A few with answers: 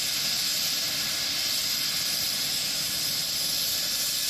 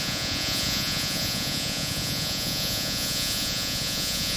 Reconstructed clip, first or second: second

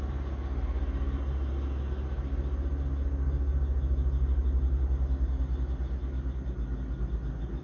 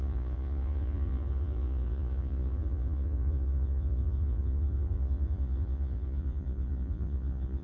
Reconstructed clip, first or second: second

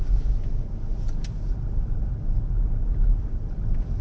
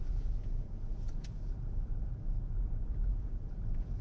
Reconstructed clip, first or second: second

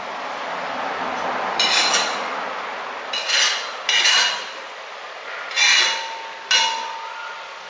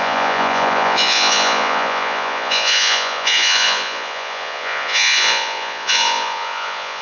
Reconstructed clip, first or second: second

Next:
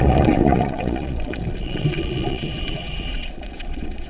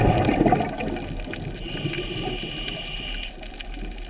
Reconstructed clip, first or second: first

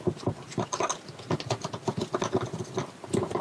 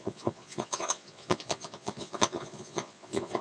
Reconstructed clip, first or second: second